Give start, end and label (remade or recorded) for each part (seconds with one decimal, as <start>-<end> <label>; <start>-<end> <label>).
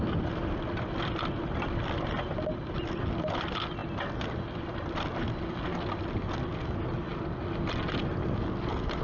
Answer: 0.0-9.0 recorded